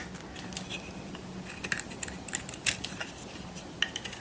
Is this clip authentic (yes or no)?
yes